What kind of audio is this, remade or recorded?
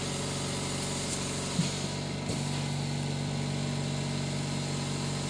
recorded